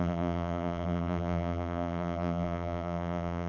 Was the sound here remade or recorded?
remade